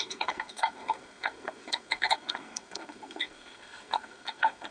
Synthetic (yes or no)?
yes